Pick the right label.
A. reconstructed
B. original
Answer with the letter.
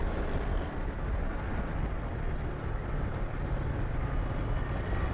B